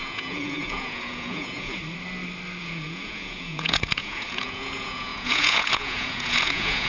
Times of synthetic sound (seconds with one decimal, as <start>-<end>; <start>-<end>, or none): 0.0-1.8; 2.6-6.9